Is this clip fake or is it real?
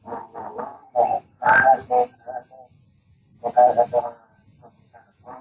real